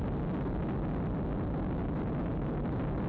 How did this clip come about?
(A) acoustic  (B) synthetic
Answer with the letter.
A